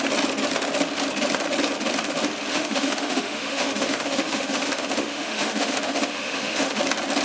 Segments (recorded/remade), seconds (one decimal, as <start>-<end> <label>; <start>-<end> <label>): 0.0-2.5 recorded; 2.5-6.8 remade; 6.8-7.2 recorded